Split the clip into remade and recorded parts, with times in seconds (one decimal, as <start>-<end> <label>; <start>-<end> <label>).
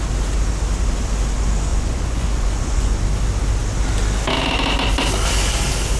0.0-1.7 recorded; 1.7-2.9 remade; 2.9-6.0 recorded